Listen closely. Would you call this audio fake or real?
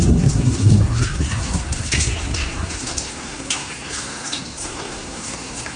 fake